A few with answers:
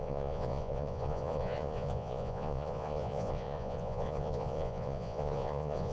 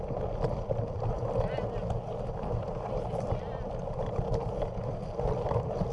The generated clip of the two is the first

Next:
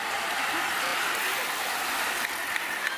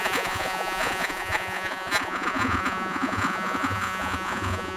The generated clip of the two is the second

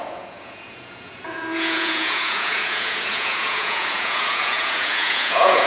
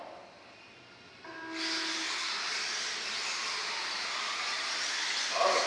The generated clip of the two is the first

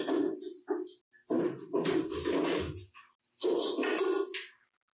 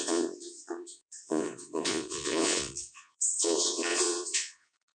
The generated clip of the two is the second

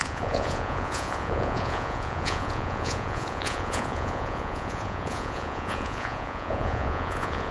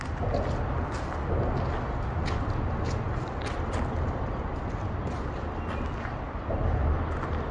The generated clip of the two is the first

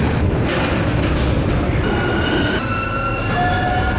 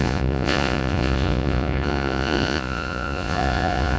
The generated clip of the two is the second